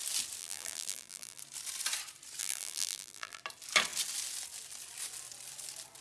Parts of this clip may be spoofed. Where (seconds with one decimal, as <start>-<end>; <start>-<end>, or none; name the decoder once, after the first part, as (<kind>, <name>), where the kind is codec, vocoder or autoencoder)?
0.4-1.4 (vocoder, BigVGAN v2); 2.4-3.4